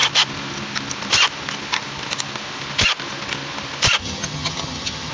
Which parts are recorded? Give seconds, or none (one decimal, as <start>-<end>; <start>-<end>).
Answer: 0.0-4.0

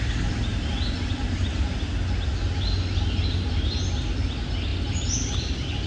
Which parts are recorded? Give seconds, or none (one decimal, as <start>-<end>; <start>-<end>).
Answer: 0.0-5.9

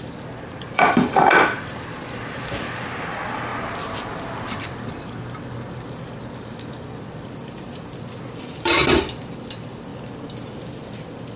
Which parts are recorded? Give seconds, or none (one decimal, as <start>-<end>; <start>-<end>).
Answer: 9.9-10.7

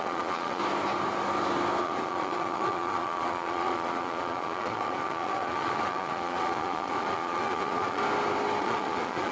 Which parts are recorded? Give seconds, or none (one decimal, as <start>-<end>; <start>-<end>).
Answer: 0.6-1.8; 8.0-8.6

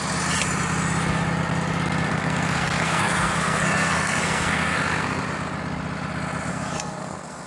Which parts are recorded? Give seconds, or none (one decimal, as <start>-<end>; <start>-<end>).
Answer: 0.0-2.1; 5.2-6.5

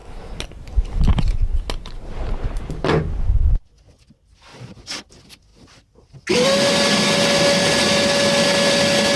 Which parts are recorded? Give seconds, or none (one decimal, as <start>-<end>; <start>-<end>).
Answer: 0.0-4.5; 5.1-9.2

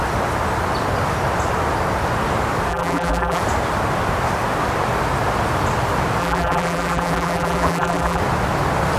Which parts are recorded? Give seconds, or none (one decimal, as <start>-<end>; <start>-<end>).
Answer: 0.0-2.7; 3.4-6.2; 8.2-9.0